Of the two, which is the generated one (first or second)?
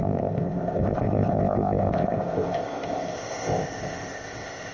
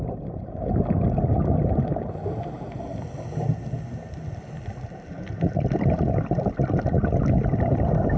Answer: first